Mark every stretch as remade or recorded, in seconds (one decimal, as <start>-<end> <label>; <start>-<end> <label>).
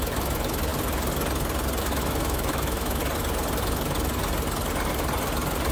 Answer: 0.0-0.7 remade; 0.7-1.8 recorded; 1.8-3.0 remade; 3.0-5.7 recorded